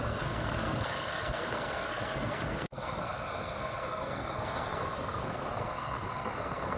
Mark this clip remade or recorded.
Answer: remade